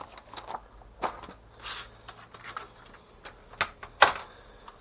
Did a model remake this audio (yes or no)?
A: no